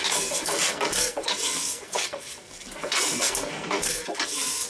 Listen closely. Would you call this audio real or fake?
fake